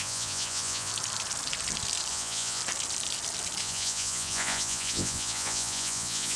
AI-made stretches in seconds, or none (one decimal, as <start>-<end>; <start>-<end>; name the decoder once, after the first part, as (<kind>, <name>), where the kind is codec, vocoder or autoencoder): 0.0-0.9 (vocoder, Vocos); 2.1-2.6; 3.6-6.4